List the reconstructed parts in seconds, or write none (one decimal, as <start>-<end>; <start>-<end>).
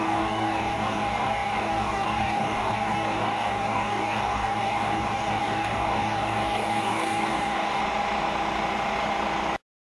0.0-7.8